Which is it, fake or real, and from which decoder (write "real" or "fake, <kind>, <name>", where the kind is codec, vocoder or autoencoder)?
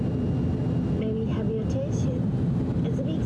real